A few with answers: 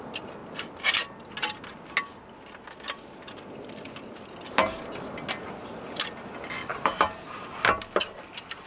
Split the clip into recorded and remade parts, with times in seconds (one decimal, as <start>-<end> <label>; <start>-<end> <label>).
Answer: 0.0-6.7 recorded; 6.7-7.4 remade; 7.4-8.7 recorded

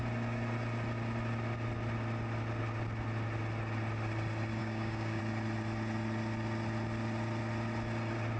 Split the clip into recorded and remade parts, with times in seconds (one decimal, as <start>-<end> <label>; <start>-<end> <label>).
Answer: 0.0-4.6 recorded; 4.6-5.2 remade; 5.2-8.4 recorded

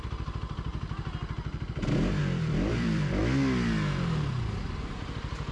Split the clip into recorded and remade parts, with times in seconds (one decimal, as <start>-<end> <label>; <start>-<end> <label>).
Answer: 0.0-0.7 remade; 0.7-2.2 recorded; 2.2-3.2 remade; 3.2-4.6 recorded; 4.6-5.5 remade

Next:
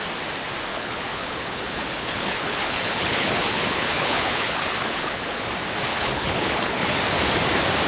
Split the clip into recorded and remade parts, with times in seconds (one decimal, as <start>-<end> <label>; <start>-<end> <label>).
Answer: 0.0-0.7 recorded; 0.7-5.4 remade; 5.4-5.9 recorded; 5.9-7.0 remade; 7.0-7.9 recorded

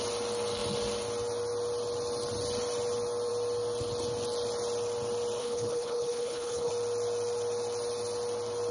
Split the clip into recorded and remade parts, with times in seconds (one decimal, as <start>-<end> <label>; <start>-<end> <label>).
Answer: 0.0-5.4 recorded; 5.4-6.7 remade; 6.7-8.7 recorded

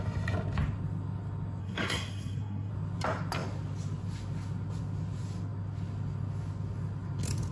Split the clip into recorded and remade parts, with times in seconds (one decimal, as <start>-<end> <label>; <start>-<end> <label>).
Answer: 0.0-1.6 recorded; 1.6-2.7 remade; 2.7-7.5 recorded

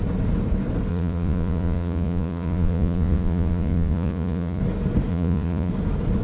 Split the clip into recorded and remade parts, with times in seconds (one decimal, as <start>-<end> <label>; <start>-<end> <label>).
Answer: 0.0-0.9 recorded; 0.9-4.6 remade; 4.6-5.1 recorded; 5.1-5.7 remade; 5.7-6.2 recorded

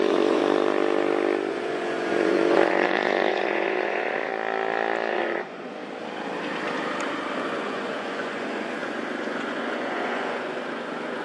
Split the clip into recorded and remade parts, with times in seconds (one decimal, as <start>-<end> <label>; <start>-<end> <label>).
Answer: 0.0-0.4 remade; 0.4-1.5 recorded; 1.5-4.3 remade; 4.3-5.1 recorded; 5.1-5.8 remade; 5.8-7.4 recorded; 7.4-11.2 remade